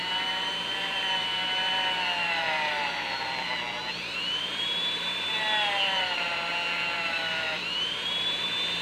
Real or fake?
fake